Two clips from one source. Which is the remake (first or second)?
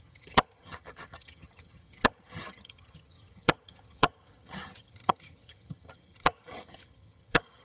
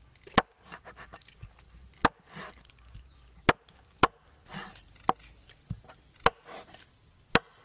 first